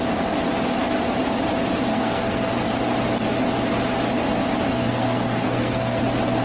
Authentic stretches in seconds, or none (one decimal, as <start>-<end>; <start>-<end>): 0.0-1.9; 2.5-4.7; 6.0-6.4